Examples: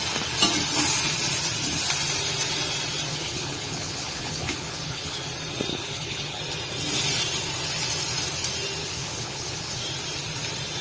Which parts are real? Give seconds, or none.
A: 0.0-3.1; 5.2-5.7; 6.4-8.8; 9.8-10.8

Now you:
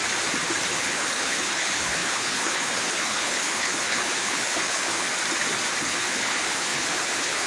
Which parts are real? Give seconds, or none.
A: 0.0-0.7; 5.1-5.8

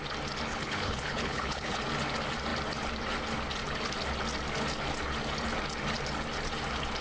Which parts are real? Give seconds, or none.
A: 0.0-0.5; 1.8-7.0

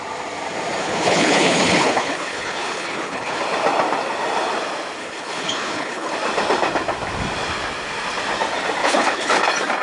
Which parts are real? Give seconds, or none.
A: 0.0-0.8; 3.4-5.0; 6.1-8.8; 9.3-9.8

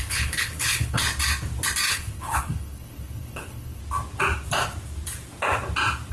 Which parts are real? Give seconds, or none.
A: 1.0-1.9; 3.8-6.1

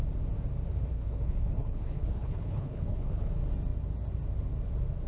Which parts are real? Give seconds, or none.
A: 0.0-0.9; 3.3-5.1

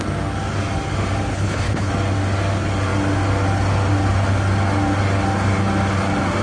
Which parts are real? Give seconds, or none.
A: 0.0-1.3; 1.9-6.4